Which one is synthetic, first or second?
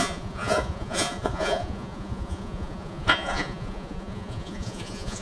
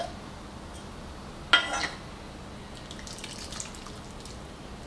first